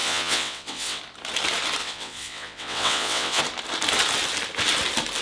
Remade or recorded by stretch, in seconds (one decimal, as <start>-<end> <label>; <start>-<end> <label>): 0.0-1.0 remade; 1.0-1.8 recorded; 1.8-3.4 remade; 3.4-5.2 recorded

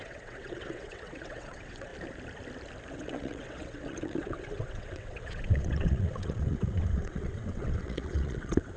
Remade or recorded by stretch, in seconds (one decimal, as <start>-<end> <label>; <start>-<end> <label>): 0.0-1.9 remade; 1.9-2.9 recorded; 2.9-8.8 remade

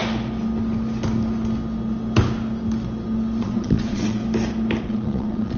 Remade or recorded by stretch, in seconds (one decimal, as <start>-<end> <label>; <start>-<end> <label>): 0.0-3.4 recorded; 3.4-4.2 remade; 4.2-4.8 recorded; 4.8-5.6 remade

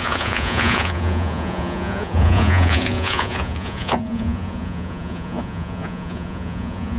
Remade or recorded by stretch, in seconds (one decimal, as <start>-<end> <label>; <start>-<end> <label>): 0.0-7.0 remade

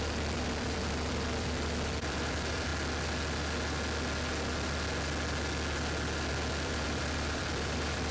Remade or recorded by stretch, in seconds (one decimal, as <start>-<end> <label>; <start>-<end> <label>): 0.0-2.7 remade; 2.7-6.3 recorded; 6.3-8.1 remade